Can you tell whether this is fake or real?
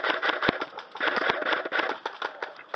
real